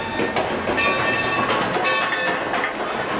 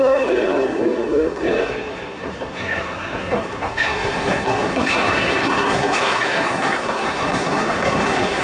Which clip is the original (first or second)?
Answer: first